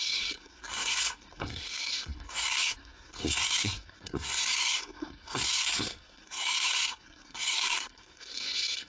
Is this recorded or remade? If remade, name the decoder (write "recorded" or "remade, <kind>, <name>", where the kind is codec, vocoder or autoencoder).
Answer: remade, codec, SNAC